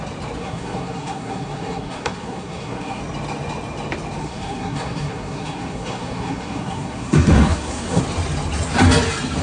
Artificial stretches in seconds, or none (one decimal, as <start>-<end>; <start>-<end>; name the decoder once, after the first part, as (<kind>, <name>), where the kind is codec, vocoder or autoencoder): 0.4-3.0 (codec, SNAC); 4.2-8.0